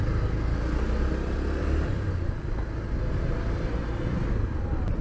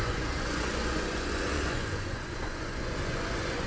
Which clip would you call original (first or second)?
first